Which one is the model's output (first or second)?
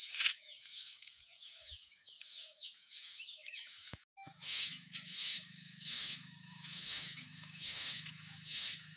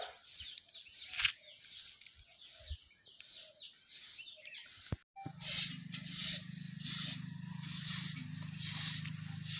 first